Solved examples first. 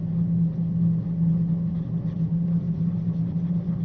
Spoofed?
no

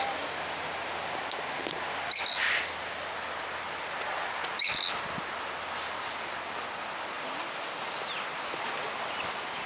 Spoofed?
no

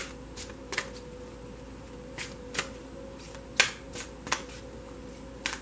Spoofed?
no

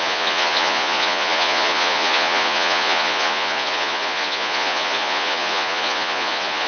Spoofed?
yes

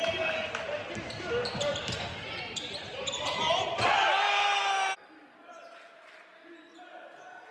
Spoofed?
no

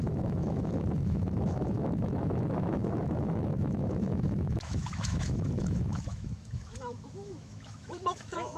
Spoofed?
yes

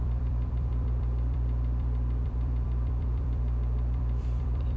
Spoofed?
yes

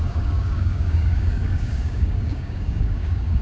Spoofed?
yes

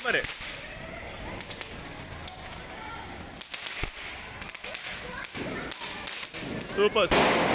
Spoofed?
no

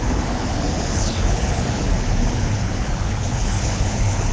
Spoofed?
yes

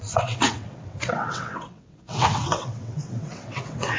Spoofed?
yes